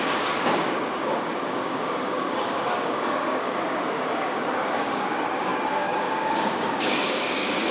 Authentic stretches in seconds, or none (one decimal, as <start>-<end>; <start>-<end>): none